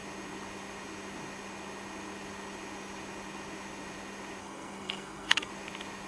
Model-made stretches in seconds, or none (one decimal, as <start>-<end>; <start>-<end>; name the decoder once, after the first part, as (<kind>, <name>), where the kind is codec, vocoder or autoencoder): 4.4-5.5 (codec, SNAC)